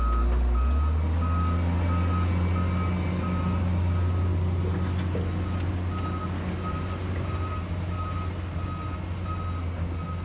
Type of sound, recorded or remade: recorded